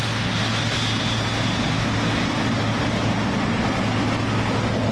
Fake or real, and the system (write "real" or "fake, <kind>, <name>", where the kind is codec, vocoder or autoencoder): real